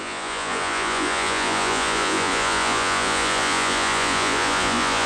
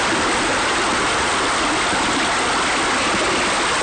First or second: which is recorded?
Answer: second